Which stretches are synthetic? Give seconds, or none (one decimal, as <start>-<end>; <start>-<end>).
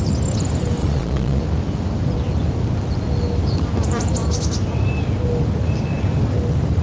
0.8-1.4